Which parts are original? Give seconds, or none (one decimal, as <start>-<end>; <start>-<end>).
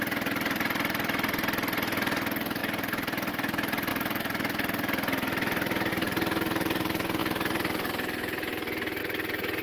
0.0-3.9; 5.9-9.6